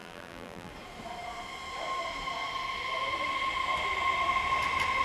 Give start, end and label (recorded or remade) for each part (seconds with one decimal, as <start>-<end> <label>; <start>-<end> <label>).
0.0-0.7 remade; 0.7-5.0 recorded